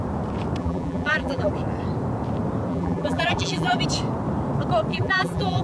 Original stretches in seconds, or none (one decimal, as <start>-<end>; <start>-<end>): 0.0-0.6; 1.5-2.7; 3.8-4.9

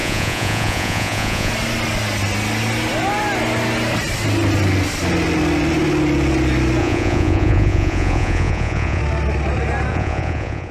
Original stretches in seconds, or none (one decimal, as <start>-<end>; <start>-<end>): 1.5-6.8; 9.0-9.9

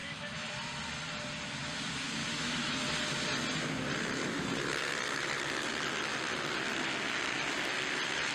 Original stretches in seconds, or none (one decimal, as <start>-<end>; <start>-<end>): 0.5-2.2; 2.9-8.3

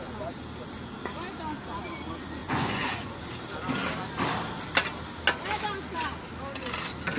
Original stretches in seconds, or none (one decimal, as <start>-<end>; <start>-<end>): 0.0-2.4; 3.2-7.2